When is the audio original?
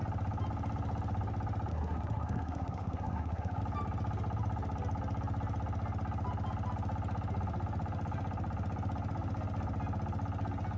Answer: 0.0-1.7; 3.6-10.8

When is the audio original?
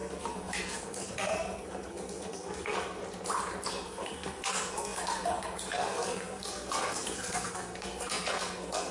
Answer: 3.0-3.7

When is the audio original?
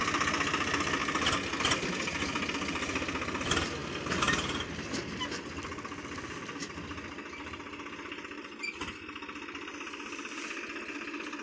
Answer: 0.0-11.4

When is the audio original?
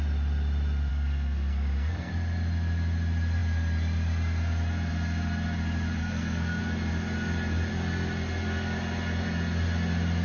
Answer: 0.0-0.9; 2.1-6.0; 6.6-10.2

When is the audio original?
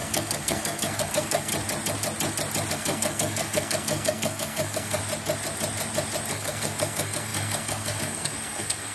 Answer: 1.5-2.7; 5.0-6.3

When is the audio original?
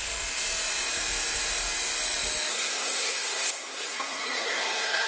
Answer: 0.0-2.5